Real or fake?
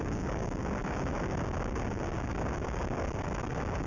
fake